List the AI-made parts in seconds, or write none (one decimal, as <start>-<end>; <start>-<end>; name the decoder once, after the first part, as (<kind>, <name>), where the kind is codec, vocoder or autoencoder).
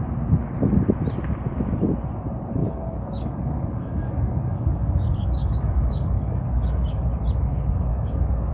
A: 2.6-7.1 (codec, DAC); 7.9-8.5